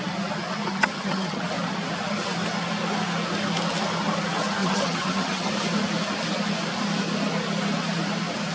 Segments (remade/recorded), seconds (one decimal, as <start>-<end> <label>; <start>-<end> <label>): 0.0-0.7 recorded; 0.7-1.4 remade; 1.4-4.6 recorded; 4.6-5.5 remade; 5.5-8.5 recorded